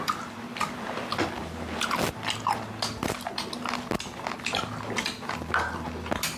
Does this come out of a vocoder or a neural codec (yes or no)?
no